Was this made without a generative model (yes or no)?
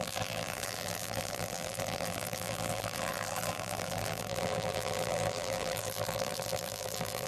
no